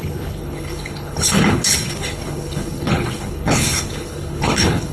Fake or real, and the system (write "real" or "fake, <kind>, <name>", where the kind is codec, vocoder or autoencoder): fake, codec, HILCodec